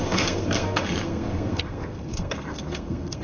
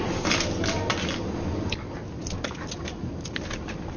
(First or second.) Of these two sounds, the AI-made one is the first